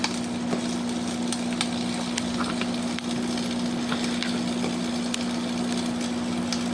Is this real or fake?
real